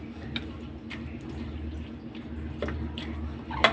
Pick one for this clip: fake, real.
fake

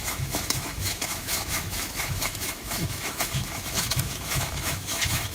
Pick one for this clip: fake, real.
fake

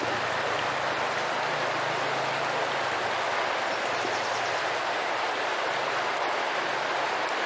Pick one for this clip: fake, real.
real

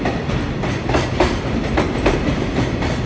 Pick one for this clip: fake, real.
real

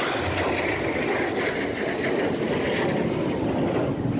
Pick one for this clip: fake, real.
real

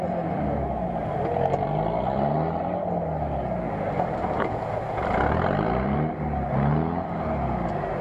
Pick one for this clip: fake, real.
real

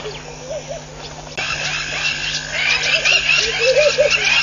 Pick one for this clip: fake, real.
real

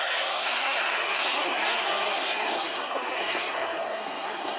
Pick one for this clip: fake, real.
fake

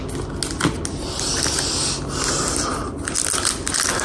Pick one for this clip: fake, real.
real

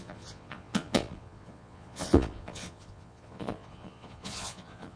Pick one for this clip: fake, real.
fake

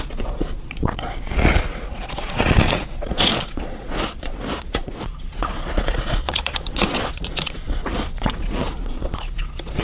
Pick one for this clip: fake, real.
fake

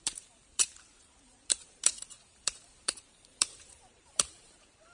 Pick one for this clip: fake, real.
fake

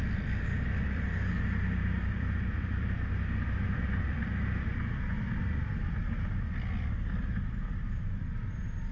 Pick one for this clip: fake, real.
fake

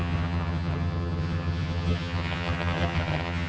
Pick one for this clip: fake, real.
fake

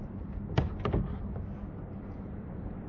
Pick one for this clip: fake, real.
real